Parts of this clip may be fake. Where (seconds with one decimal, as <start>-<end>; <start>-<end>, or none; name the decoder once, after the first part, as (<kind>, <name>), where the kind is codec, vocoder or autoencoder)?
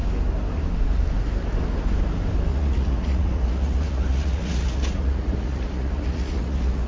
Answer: 2.5-6.9 (vocoder, Vocos)